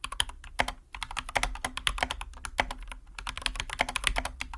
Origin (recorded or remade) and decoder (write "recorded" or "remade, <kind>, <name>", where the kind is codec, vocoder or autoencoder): recorded